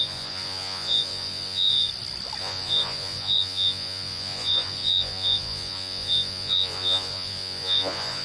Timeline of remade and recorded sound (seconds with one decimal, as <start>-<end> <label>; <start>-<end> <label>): 0.0-1.9 remade; 1.9-2.4 recorded; 2.4-8.2 remade